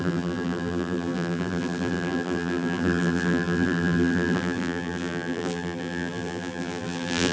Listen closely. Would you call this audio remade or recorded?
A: remade